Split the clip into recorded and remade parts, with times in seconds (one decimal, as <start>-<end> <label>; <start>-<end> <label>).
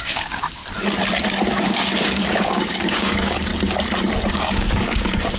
0.0-0.6 remade; 0.6-1.5 recorded; 1.5-3.5 remade; 3.5-4.3 recorded; 4.3-5.4 remade